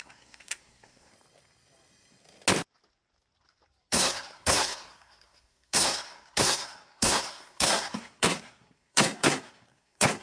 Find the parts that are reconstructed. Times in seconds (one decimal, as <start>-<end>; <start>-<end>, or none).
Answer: 0.0-1.1; 3.9-10.2